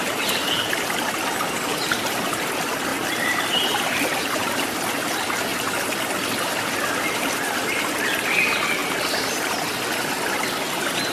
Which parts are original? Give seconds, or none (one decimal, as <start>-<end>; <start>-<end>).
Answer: 0.0-1.7; 2.5-2.9; 4.9-8.8; 9.6-11.1